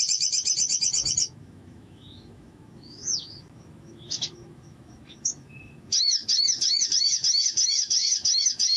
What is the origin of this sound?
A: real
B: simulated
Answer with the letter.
B